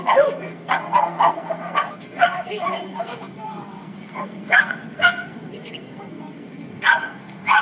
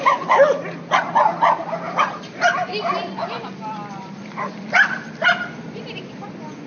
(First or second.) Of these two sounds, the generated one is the first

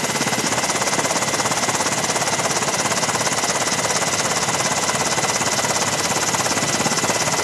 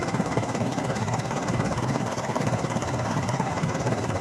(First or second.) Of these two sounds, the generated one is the second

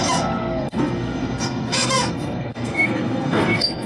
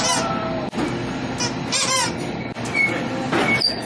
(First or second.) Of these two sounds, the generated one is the first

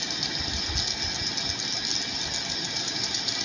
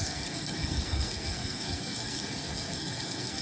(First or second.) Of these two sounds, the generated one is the second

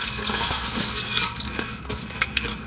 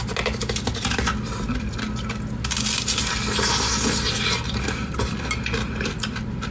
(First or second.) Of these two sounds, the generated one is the first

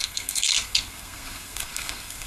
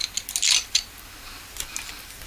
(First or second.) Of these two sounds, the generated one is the first